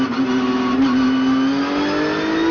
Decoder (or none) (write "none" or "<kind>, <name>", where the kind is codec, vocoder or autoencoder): none